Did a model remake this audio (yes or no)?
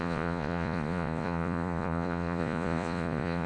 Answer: yes